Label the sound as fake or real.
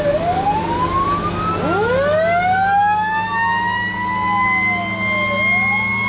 real